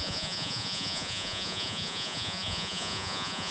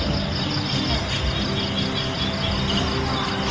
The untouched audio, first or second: second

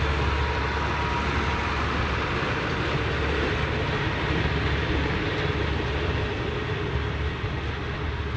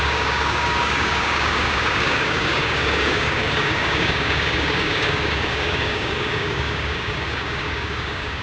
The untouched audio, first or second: first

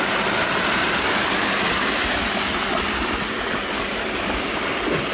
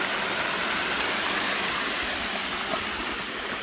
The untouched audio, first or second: first